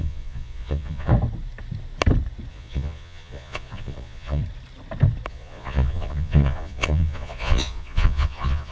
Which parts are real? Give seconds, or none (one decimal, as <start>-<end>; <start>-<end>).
1.1-2.5; 4.4-5.3